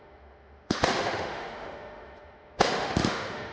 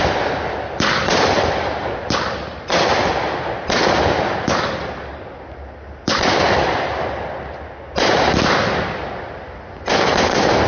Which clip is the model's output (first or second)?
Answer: first